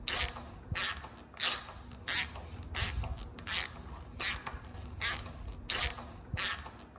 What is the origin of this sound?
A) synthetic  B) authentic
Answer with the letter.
B